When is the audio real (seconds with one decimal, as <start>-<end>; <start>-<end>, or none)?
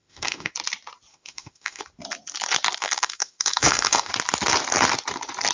0.5-1.1; 1.8-2.8; 4.1-5.5